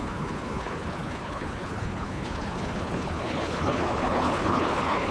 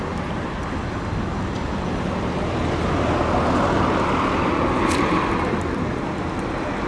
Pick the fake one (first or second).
first